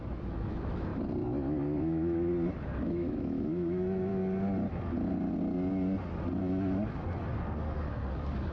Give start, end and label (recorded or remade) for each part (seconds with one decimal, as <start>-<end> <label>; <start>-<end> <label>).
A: 0.0-0.9 remade; 0.9-1.8 recorded; 1.8-2.3 remade; 2.3-2.8 recorded; 2.8-4.1 remade; 4.1-8.5 recorded

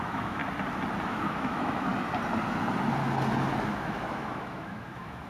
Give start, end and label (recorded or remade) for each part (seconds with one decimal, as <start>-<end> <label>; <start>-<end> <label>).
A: 0.0-0.4 remade; 0.4-1.0 recorded; 1.0-1.9 remade; 1.9-3.7 recorded; 3.7-5.3 remade

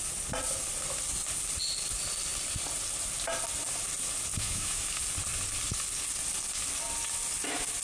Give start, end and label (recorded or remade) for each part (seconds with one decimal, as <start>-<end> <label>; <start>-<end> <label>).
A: 0.0-4.3 recorded; 4.3-5.0 remade; 5.0-7.8 recorded

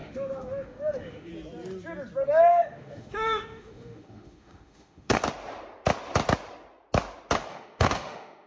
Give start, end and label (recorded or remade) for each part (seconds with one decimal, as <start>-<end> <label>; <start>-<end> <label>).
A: 0.0-1.3 remade; 1.3-2.5 recorded; 2.5-5.2 remade; 5.2-7.5 recorded; 7.5-8.5 remade

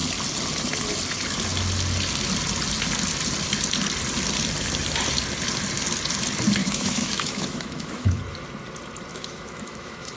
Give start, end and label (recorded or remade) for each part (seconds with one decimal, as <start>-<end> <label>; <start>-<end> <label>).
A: 0.0-6.6 recorded; 6.6-8.2 remade; 8.2-9.1 recorded; 9.1-10.2 remade

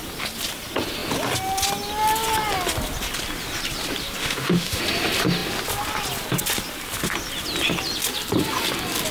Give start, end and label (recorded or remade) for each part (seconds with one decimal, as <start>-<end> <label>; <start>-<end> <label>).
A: 0.0-4.2 recorded; 4.2-4.8 remade; 4.8-9.1 recorded

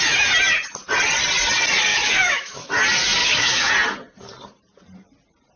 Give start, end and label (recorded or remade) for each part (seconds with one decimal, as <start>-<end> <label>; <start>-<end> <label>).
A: 0.0-1.9 recorded; 1.9-2.7 remade; 2.7-3.2 recorded; 3.2-3.7 remade; 3.7-5.6 recorded